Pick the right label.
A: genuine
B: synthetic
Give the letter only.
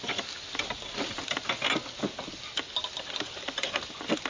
A